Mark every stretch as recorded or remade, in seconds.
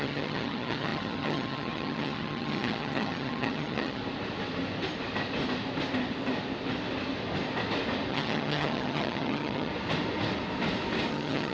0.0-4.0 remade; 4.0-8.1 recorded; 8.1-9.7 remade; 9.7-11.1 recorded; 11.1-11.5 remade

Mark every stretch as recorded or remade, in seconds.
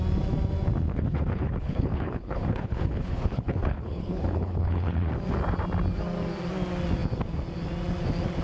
0.0-0.9 recorded; 0.9-5.1 remade; 5.1-8.4 recorded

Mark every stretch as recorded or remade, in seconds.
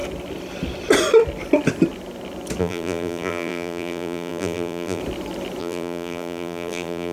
0.0-2.6 recorded; 2.6-5.0 remade; 5.0-5.6 recorded; 5.6-7.1 remade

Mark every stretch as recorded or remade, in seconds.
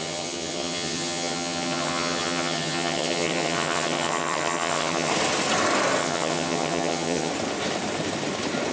0.0-5.1 remade; 5.1-6.0 recorded; 6.0-7.3 remade; 7.3-8.7 recorded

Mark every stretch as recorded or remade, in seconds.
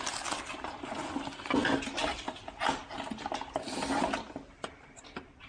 0.0-5.5 recorded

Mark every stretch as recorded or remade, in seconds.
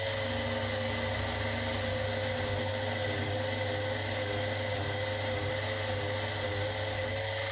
0.0-7.5 recorded